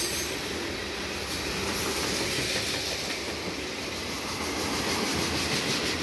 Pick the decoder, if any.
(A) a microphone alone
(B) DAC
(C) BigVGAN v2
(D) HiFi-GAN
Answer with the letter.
A